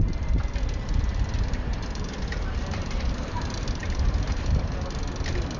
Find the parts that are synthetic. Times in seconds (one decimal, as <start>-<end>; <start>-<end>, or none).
1.7-3.3; 3.8-4.6